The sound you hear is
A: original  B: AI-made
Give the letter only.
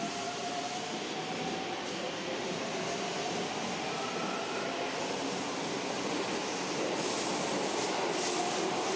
A